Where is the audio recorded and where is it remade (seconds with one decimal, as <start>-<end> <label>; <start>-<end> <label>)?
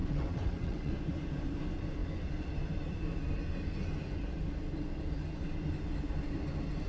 0.0-0.9 remade; 0.9-6.9 recorded